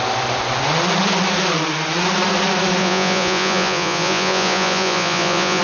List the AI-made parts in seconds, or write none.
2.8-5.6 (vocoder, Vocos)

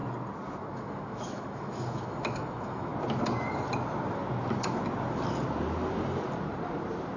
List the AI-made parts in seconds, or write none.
0.6-2.9 (autoencoder, DAC-VAE)

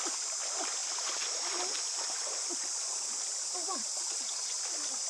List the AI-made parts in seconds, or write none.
3.8-4.6 (vocoder, WaveNeXt)

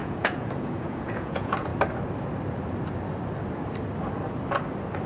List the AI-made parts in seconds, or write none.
0.0-1.7 (vocoder, Vocos)

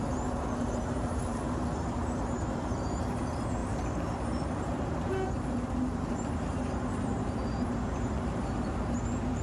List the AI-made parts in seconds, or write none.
0.0-9.4 (vocoder, BigVGAN v2)

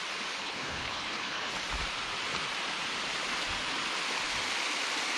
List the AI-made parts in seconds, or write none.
0.4-1.5 (codec, HILCodec)